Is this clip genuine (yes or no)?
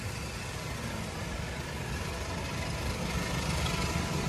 yes